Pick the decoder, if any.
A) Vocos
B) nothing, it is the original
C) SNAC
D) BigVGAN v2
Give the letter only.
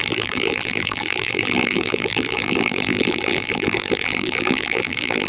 D